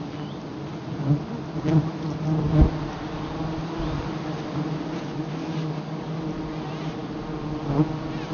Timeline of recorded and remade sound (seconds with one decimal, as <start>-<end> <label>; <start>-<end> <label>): 0.0-5.4 recorded; 5.4-6.2 remade; 6.2-8.3 recorded